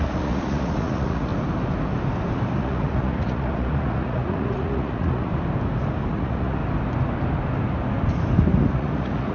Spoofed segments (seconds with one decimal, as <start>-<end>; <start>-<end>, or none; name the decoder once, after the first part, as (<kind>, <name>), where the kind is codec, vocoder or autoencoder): 0.0-1.3 (vocoder, Vocos); 2.6-5.3; 6.1-6.6; 8.7-9.3